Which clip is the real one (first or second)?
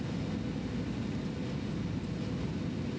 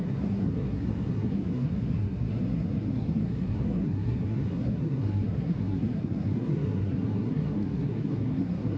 first